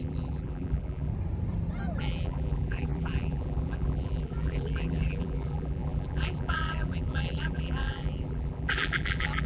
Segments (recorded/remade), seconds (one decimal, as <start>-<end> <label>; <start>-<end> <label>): 0.0-1.1 remade; 1.1-2.0 recorded; 2.0-9.5 remade

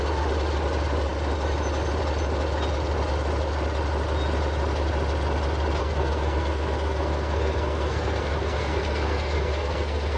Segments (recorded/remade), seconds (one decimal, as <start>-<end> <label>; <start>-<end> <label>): 0.0-5.8 recorded; 5.8-10.2 remade